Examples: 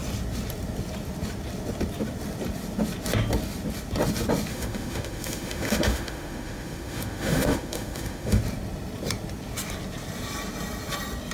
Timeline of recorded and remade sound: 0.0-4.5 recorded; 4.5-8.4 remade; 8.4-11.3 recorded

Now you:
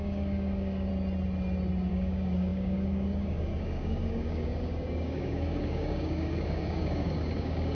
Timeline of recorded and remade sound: 0.0-0.9 remade; 0.9-1.9 recorded; 1.9-7.7 remade

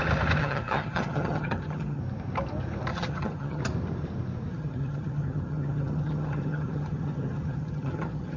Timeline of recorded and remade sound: 0.0-0.4 recorded; 0.4-2.0 remade; 2.0-2.9 recorded; 2.9-3.6 remade; 3.6-4.5 recorded; 4.5-8.4 remade

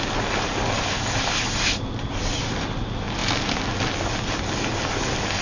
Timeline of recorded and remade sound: 0.0-5.4 recorded

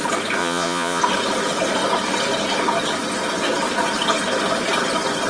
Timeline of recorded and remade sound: 0.0-0.4 recorded; 0.4-1.0 remade; 1.0-5.3 recorded

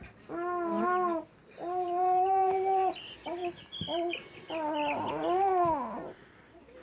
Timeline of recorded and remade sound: 0.0-1.4 recorded; 1.4-3.0 remade; 3.0-3.4 recorded; 3.4-5.1 remade; 5.1-6.8 recorded

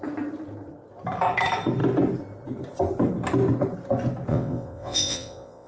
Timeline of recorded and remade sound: 0.0-4.3 recorded; 4.3-5.7 remade